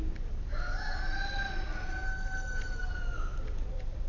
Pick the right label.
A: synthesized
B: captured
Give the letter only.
B